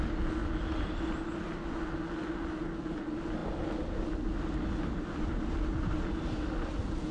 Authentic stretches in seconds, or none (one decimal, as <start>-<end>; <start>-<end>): 0.0-7.1